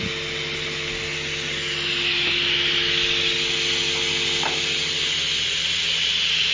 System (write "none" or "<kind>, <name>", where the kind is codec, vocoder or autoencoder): none